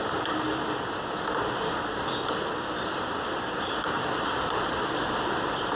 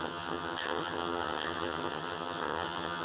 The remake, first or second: second